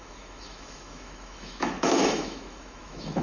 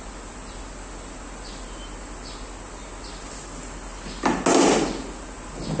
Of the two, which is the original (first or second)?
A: second